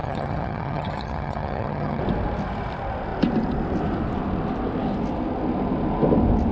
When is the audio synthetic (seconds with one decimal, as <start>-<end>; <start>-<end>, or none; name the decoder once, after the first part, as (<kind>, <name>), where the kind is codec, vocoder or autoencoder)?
0.0-2.0 (vocoder, HiFi-GAN)

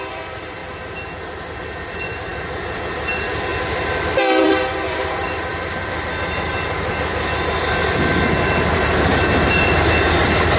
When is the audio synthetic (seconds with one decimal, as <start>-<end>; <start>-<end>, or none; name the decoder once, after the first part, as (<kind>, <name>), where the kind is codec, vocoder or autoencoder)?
0.0-0.6 (vocoder, BigVGAN v2); 1.8-3.5; 4.4-6.5; 9.1-10.6

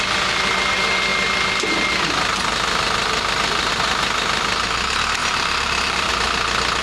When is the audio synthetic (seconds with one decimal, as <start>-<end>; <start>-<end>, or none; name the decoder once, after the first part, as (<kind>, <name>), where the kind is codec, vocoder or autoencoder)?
5.2-6.1 (vocoder, BigVGAN v2)

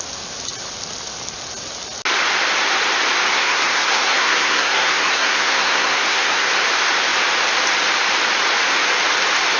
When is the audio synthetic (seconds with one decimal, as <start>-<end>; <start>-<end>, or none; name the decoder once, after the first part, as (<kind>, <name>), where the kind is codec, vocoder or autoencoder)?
3.3-6.5 (codec, SNAC)